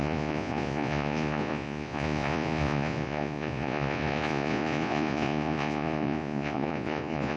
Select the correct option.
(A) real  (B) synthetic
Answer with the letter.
B